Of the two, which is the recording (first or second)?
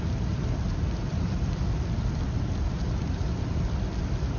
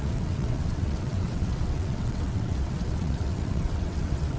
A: first